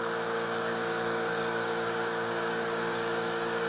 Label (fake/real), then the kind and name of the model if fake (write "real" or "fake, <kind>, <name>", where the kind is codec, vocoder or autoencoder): fake, codec, DAC